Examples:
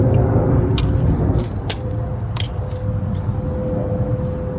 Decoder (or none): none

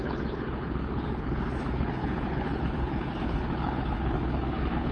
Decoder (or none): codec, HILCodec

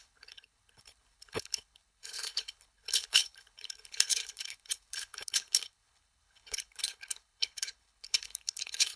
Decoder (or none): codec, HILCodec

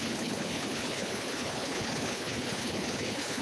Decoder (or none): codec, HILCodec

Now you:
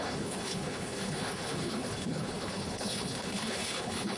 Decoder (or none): codec, HILCodec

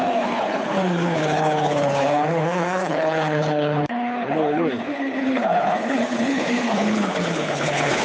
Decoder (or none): codec, HILCodec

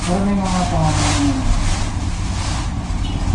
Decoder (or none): none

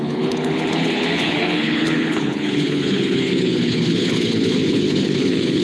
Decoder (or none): codec, HILCodec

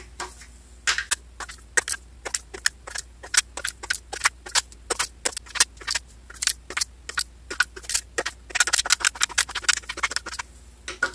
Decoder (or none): none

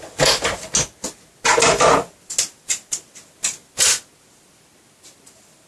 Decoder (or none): none